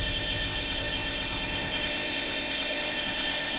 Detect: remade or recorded remade